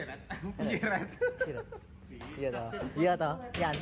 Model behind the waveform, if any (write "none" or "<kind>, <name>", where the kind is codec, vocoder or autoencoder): none